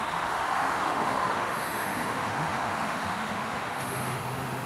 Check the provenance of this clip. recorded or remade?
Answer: remade